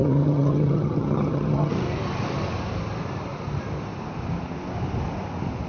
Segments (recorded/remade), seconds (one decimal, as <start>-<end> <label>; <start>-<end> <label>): 0.0-1.7 remade; 1.7-5.7 recorded